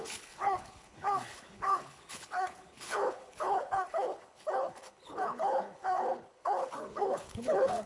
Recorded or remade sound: remade